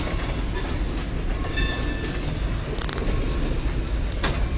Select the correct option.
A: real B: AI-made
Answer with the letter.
A